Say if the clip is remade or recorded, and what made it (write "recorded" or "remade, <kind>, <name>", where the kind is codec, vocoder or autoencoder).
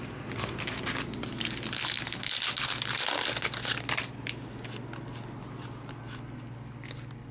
recorded